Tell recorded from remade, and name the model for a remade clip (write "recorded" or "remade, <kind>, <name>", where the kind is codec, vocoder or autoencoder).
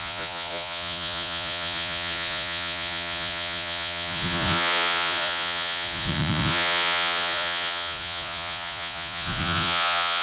remade, vocoder, Vocos